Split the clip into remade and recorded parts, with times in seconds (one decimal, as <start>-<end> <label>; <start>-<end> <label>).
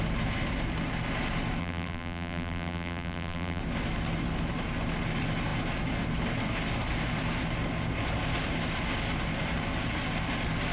0.0-1.6 recorded; 1.6-3.6 remade; 3.6-10.7 recorded